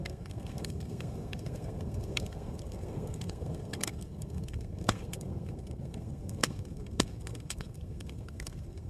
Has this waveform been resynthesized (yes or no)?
yes